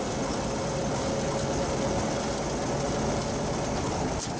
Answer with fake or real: real